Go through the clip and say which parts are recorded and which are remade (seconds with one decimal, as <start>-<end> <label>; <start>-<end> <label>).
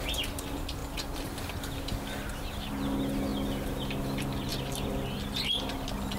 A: 0.0-6.2 recorded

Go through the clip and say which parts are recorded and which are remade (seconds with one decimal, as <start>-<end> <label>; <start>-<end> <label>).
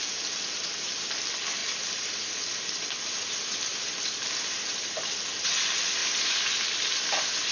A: 0.0-1.6 recorded; 1.6-3.1 remade; 3.1-3.7 recorded; 3.7-4.8 remade; 4.8-6.0 recorded; 6.0-7.1 remade; 7.1-7.5 recorded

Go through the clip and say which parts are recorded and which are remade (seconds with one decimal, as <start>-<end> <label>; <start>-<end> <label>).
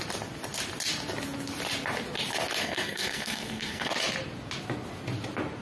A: 0.0-2.6 recorded; 2.6-3.9 remade; 3.9-5.6 recorded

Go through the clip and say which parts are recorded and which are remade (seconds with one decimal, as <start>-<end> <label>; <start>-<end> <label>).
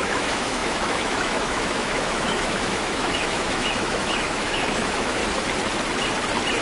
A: 0.0-5.2 remade; 5.2-6.6 recorded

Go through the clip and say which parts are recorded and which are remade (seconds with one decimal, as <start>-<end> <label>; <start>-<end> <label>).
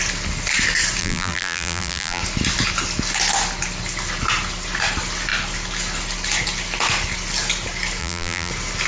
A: 0.0-1.0 recorded; 1.0-2.2 remade; 2.2-8.0 recorded; 8.0-8.5 remade; 8.5-8.9 recorded